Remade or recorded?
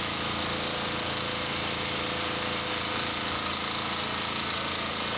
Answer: recorded